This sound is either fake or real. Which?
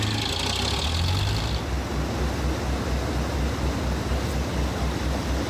real